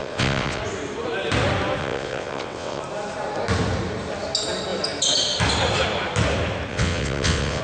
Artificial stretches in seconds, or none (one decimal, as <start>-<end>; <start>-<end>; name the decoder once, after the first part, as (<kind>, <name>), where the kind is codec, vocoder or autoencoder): 0.0-0.6 (vocoder, WaveNeXt); 1.8-2.8; 6.7-7.6